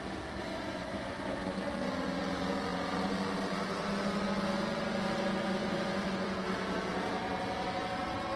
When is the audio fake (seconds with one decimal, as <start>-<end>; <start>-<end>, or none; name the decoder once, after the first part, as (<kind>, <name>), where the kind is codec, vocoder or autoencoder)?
0.4-1.6 (vocoder, Vocos); 5.6-6.3